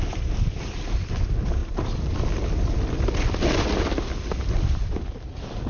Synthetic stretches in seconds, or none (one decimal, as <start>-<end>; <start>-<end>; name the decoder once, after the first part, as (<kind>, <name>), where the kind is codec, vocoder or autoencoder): none